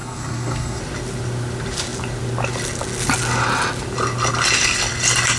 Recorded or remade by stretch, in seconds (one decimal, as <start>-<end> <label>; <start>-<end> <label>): 0.0-0.8 remade; 0.8-5.4 recorded